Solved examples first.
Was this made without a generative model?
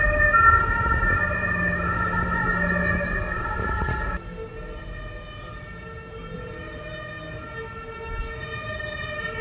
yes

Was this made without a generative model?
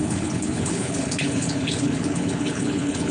no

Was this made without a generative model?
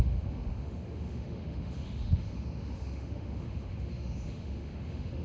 no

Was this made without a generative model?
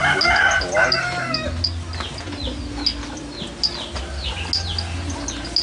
yes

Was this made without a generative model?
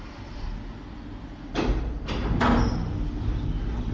yes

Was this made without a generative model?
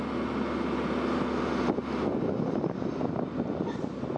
yes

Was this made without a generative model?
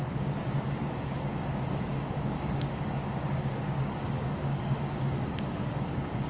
no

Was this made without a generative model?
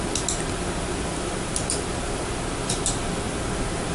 yes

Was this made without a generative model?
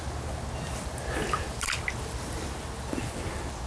yes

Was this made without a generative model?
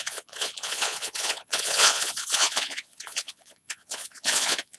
no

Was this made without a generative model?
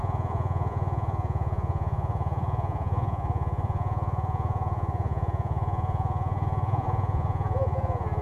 no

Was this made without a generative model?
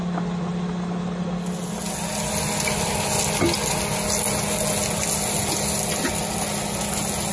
yes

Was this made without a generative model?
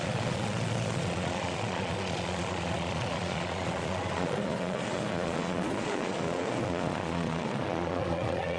no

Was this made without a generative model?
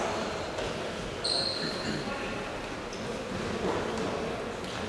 yes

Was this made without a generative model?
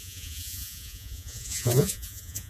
no